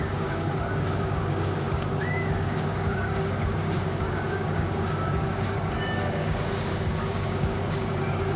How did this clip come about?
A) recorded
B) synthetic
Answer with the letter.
B